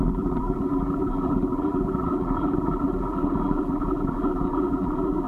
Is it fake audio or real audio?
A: fake